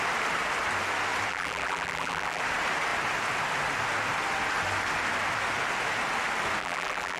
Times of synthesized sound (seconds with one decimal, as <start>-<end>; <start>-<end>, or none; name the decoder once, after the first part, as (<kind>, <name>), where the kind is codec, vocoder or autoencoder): 1.3-2.4 (vocoder, BigVGAN v2); 6.6-7.2